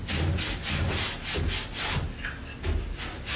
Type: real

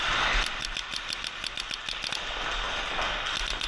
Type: real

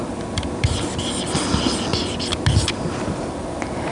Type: real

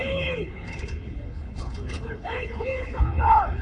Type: fake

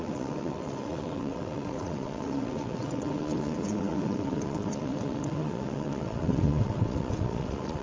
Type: fake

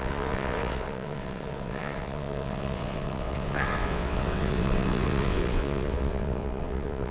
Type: fake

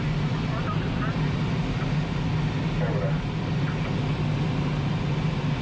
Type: real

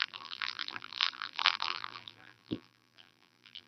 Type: fake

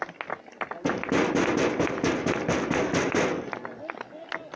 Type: real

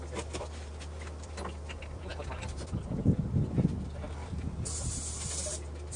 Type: real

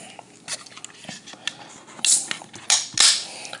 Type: real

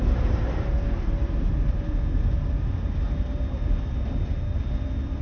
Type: real